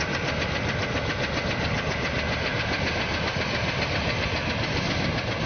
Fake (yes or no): no